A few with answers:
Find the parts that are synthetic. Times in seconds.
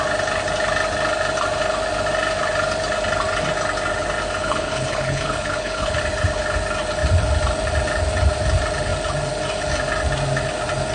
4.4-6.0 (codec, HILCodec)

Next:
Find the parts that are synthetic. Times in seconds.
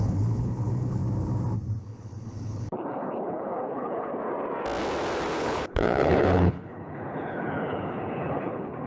0.0-1.0 (codec, HILCodec); 1.8-4.1; 5.4-8.9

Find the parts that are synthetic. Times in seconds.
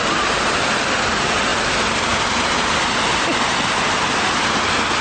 none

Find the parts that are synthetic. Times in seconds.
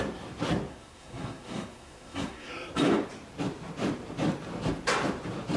0.7-2.5 (codec, SNAC)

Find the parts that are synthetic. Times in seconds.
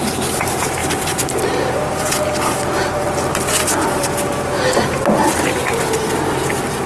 none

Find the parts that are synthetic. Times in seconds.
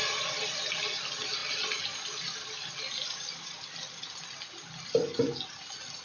none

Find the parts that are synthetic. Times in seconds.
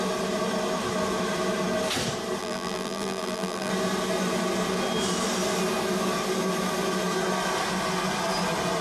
2.4-3.7 (vocoder, BigVGAN v2)